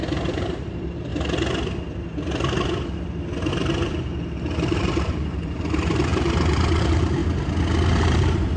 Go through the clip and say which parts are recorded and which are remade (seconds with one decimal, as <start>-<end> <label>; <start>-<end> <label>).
0.0-1.1 remade; 1.1-3.5 recorded; 3.5-7.2 remade; 7.2-8.0 recorded; 8.0-8.6 remade